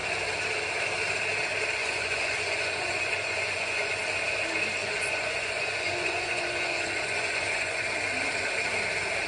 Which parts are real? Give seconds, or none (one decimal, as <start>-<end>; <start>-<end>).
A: 0.0-1.8; 4.0-4.8; 7.9-9.3